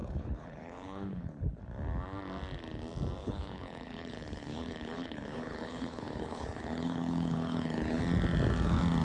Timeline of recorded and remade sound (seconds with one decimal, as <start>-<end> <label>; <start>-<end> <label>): 0.0-1.6 remade; 1.6-3.2 recorded; 3.2-8.0 remade; 8.0-9.0 recorded